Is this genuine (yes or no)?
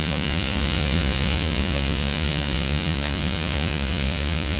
no